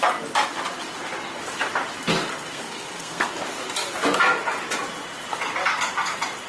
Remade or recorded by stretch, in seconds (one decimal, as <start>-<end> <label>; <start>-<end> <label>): 0.0-2.3 recorded; 2.3-3.3 remade; 3.3-6.5 recorded